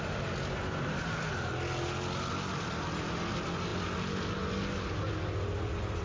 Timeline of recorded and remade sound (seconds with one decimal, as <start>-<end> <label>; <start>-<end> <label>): 0.0-6.0 recorded